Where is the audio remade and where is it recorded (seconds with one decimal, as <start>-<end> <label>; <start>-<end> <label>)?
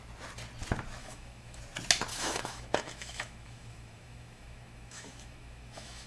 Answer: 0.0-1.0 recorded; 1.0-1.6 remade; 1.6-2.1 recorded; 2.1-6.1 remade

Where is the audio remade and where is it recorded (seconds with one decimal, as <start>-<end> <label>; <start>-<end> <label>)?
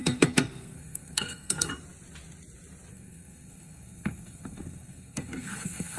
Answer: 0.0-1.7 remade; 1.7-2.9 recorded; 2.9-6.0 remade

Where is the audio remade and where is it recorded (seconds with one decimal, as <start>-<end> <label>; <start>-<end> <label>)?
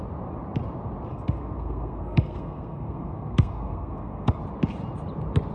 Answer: 0.0-1.1 recorded; 1.1-4.4 remade; 4.4-5.5 recorded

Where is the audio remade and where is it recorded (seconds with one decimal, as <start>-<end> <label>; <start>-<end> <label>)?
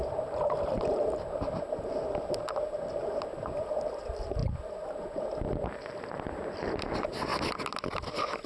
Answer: 0.0-1.5 remade; 1.5-4.4 recorded; 4.4-5.2 remade; 5.2-8.5 recorded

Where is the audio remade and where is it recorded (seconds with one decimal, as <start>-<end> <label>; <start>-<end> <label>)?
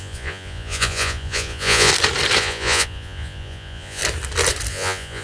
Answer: 0.0-1.9 remade; 1.9-2.4 recorded; 2.4-4.0 remade; 4.0-4.7 recorded; 4.7-5.2 remade